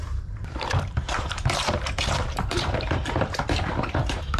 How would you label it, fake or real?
fake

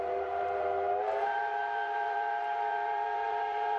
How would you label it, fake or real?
fake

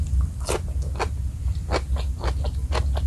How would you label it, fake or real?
real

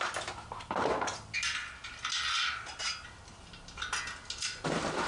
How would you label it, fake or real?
real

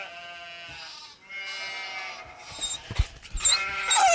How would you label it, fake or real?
real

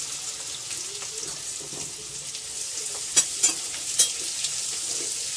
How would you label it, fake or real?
real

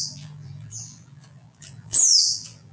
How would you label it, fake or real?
fake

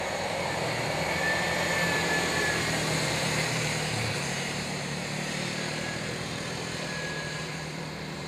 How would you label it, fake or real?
fake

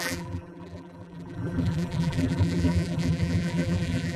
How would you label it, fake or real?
fake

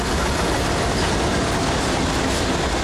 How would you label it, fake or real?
real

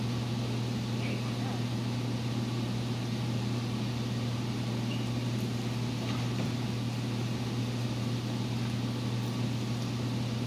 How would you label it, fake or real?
fake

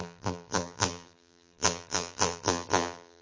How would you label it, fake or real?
fake